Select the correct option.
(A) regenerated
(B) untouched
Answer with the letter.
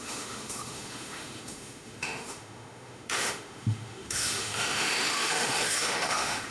A